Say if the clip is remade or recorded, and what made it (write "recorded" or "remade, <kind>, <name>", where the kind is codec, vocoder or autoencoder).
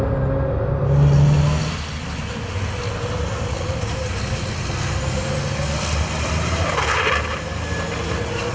recorded